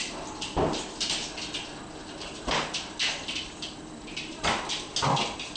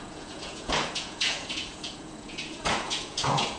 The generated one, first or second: second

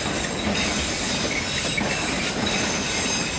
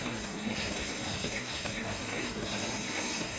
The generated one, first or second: second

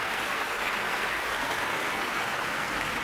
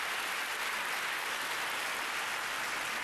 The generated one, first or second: first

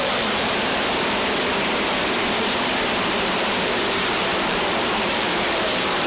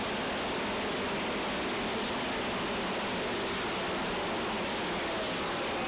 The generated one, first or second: first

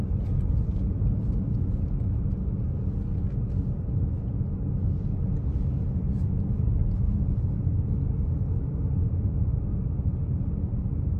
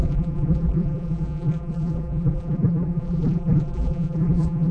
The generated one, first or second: second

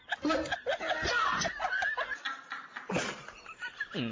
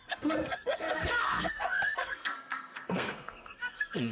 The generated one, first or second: second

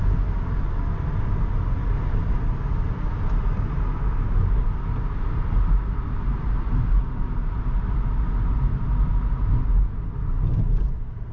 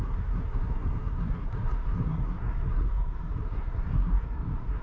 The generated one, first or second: second